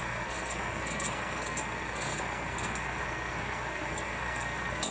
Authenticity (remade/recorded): remade